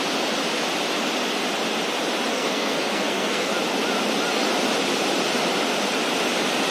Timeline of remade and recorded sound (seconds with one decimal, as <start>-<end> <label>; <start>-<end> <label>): 0.0-2.3 recorded; 2.3-3.5 remade; 3.5-6.7 recorded